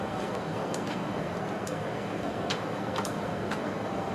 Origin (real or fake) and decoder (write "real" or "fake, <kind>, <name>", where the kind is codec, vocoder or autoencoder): fake, codec, SNAC